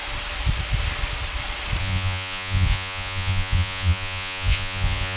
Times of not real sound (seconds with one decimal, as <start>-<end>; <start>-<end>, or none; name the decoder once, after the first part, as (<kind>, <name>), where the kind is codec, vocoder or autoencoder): 1.8-5.2 (vocoder, Vocos)